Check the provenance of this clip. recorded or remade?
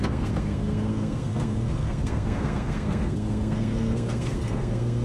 remade